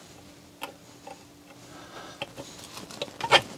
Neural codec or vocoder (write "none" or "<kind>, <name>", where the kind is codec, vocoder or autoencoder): none